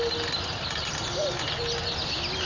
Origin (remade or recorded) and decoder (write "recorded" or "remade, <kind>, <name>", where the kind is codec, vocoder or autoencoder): recorded